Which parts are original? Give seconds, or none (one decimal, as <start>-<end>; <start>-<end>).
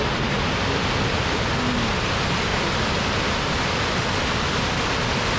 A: 0.0-5.4